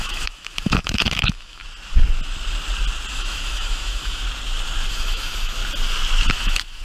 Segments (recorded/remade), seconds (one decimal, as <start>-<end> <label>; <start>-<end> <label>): 0.0-1.6 remade; 1.6-3.1 recorded; 3.1-4.2 remade; 4.2-4.9 recorded; 4.9-5.6 remade; 5.6-6.3 recorded; 6.3-6.8 remade